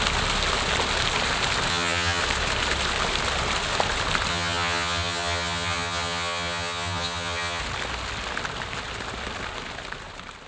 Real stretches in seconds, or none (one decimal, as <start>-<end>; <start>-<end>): 0.0-1.7; 2.2-4.3; 7.6-10.5